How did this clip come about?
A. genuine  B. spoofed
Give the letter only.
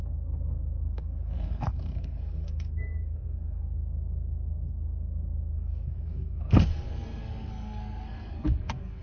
B